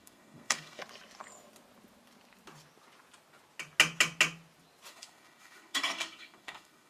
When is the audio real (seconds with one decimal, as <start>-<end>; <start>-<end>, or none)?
0.8-4.9